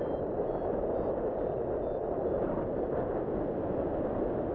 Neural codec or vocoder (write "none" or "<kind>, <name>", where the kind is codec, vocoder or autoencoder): none